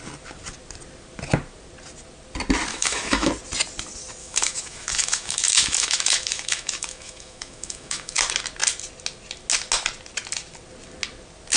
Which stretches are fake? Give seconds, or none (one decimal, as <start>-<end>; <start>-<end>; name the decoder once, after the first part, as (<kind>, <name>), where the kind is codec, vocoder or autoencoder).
2.7-3.3 (autoencoder, DAC-VAE); 4.2-8.2